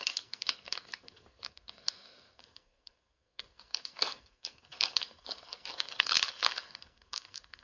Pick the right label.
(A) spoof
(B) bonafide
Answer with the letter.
A